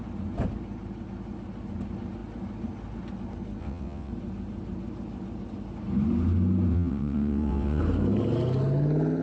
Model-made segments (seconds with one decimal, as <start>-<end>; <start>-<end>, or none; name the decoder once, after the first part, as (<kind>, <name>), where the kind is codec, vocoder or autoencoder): 3.6-4.1 (vocoder, WaveNeXt); 6.7-7.8